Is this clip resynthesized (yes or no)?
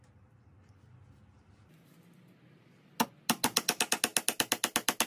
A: no